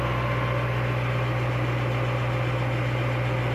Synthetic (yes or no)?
no